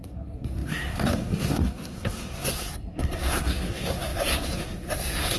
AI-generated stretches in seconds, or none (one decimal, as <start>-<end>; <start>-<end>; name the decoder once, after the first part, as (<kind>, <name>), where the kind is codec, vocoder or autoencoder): 0.0-5.4 (codec, SNAC)